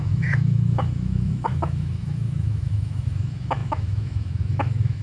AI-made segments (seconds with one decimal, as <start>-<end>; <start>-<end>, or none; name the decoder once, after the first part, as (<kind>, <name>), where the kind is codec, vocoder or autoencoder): 0.0-5.0 (autoencoder, DAC-VAE)